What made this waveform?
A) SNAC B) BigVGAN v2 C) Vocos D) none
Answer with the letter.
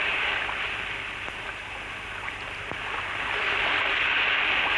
D